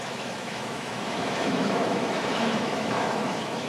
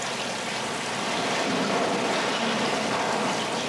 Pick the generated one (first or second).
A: first